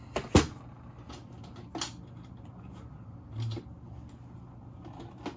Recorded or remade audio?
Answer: recorded